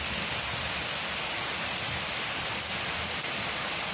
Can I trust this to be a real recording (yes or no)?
yes